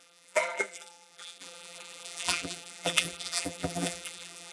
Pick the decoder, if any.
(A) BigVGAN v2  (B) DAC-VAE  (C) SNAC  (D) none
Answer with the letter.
A